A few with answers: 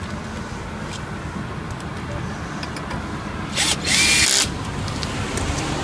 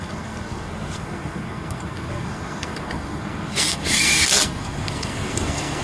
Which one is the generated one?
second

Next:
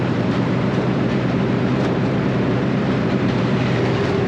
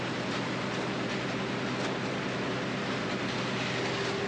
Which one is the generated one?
first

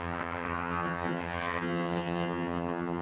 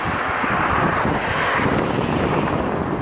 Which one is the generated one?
first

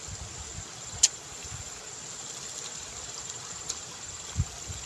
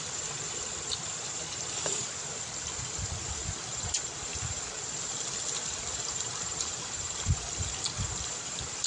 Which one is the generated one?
second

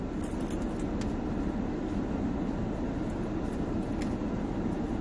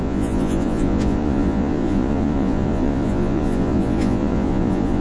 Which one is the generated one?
second